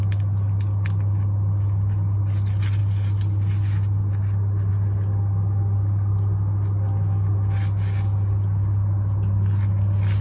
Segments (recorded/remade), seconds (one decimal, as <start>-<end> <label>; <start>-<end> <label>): 0.0-10.2 recorded